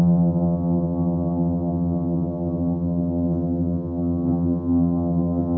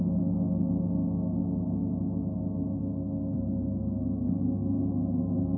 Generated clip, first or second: first